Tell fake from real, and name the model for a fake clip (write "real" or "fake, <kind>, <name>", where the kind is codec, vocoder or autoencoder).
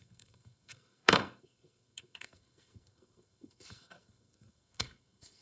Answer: fake, codec, SNAC